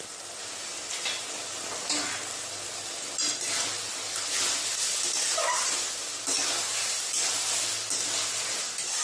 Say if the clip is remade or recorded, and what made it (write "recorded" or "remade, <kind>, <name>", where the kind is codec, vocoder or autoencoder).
recorded